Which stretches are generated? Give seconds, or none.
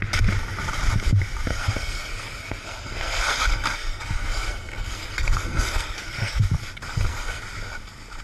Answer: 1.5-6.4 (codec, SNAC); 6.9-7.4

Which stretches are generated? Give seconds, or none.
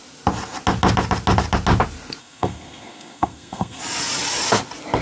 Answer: 2.2-3.8 (codec, SNAC)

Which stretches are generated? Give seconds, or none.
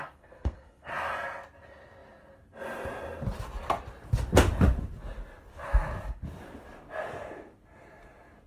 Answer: 0.0-0.9 (codec, SNAC)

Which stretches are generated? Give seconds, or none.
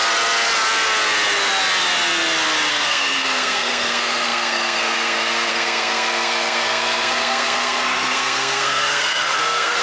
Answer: 2.7-9.8 (codec, SNAC)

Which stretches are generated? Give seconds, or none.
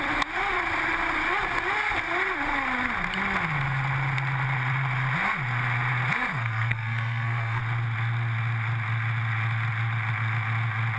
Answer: 6.3-7.6 (codec, SNAC)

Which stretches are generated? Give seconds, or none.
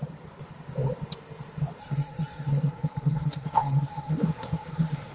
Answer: 1.8-5.1 (codec, SNAC)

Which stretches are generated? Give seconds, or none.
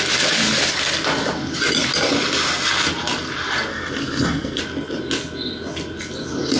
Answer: 3.7-4.6 (codec, SNAC)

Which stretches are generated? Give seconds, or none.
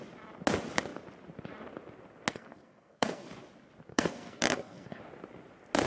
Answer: 2.3-3.3 (codec, SNAC); 3.9-5.0